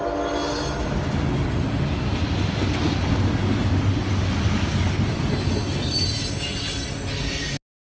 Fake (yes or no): no